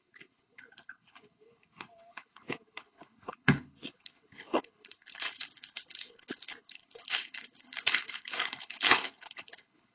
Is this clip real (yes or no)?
no